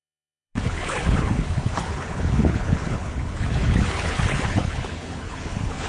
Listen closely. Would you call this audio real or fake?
fake